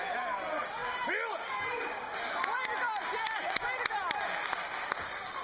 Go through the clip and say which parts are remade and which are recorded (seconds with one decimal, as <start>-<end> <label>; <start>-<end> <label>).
0.0-5.4 recorded